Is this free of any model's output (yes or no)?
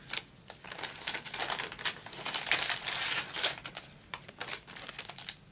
yes